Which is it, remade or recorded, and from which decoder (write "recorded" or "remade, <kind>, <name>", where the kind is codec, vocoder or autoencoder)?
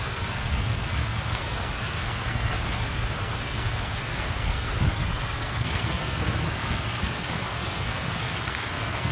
remade, codec, SNAC